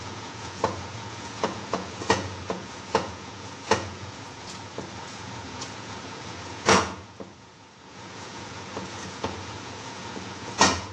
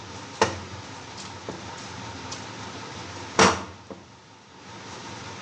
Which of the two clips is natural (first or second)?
second